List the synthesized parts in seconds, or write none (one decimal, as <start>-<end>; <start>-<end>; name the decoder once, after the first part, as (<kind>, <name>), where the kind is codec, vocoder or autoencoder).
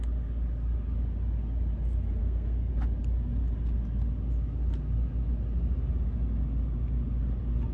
2.2-2.7 (codec, SNAC)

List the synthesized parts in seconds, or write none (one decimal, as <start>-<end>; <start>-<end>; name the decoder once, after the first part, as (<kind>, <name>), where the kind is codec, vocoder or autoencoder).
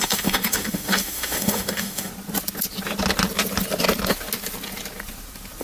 0.0-2.1 (autoencoder, DAC-VAE)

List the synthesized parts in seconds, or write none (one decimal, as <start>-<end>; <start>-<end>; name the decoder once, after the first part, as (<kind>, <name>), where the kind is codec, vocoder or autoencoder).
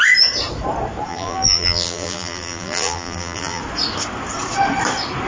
1.1-3.6 (vocoder, BigVGAN v2)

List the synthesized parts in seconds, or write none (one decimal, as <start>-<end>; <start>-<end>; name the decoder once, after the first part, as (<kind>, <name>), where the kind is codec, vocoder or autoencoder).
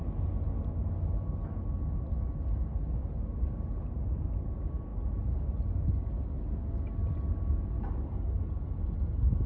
none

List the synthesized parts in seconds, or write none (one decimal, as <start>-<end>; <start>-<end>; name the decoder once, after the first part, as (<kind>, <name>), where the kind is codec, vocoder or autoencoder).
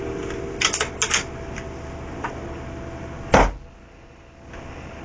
none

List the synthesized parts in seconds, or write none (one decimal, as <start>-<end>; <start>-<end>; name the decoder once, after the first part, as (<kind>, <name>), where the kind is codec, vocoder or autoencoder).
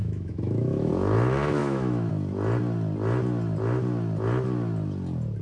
0.0-0.9 (autoencoder, DAC-VAE); 1.6-2.1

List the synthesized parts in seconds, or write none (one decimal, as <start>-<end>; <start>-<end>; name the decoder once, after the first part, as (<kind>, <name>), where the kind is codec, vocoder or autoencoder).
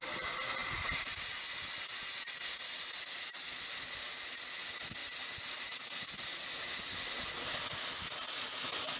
none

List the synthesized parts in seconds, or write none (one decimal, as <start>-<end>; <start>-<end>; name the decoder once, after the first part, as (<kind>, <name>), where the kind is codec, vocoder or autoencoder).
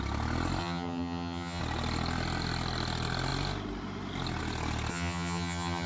0.6-1.6 (vocoder, HiFi-GAN); 4.9-5.9